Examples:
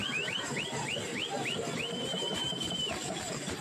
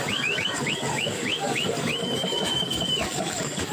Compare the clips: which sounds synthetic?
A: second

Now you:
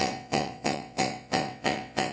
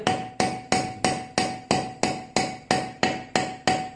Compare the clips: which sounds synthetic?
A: first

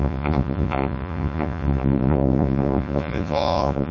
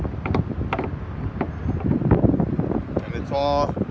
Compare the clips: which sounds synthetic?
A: first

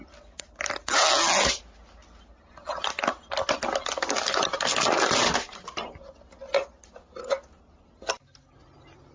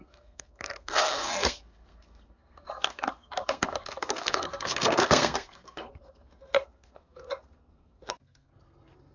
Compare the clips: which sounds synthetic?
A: second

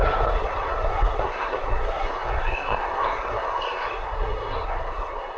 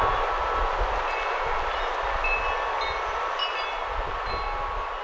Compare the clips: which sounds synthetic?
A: first